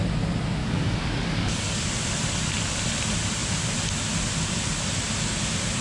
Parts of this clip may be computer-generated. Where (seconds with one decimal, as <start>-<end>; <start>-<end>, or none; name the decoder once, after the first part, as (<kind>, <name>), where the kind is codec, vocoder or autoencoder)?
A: 0.6-1.9 (codec, DAC)